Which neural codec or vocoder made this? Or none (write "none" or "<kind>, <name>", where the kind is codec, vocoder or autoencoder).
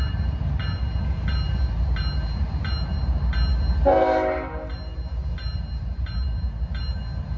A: none